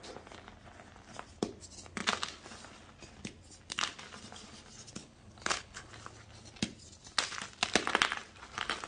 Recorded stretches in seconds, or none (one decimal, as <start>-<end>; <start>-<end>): 0.0-5.0; 5.9-8.9